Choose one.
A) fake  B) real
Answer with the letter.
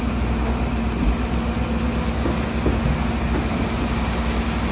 B